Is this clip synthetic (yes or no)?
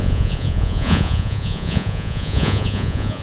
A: yes